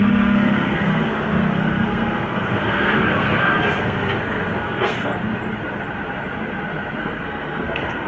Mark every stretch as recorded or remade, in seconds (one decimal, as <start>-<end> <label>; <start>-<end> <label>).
0.0-5.1 remade; 5.1-7.0 recorded; 7.0-8.1 remade